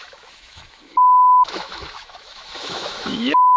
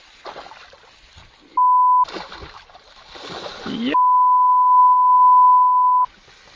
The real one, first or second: second